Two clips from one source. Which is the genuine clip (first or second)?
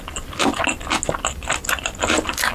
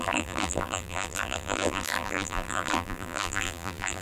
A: first